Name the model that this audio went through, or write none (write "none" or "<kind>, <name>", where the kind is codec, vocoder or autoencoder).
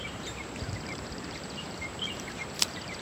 vocoder, BigVGAN v2